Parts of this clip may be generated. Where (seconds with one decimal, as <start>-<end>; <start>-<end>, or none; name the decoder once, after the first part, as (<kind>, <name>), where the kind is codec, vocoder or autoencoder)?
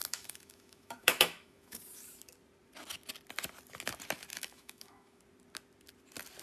0.0-1.8 (autoencoder, DAC-VAE); 4.3-5.2